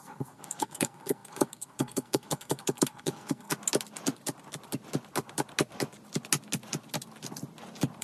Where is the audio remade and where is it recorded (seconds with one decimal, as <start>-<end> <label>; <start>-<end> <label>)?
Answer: 0.0-3.5 remade; 3.5-8.0 recorded